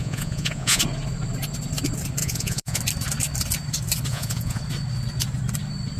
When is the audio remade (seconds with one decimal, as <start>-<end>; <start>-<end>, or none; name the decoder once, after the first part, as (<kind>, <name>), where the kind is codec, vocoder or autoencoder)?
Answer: 0.0-0.8 (vocoder, Vocos); 2.2-2.8; 4.1-4.6